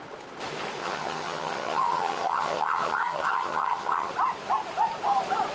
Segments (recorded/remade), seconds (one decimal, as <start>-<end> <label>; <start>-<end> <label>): 0.0-0.8 recorded; 0.8-4.1 remade; 4.1-5.5 recorded